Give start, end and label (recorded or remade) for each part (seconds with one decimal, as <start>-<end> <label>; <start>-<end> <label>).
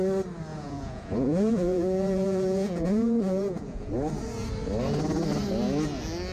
0.0-0.5 recorded; 0.5-3.9 remade; 3.9-6.3 recorded